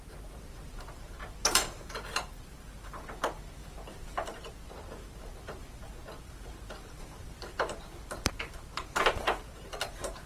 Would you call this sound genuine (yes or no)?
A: no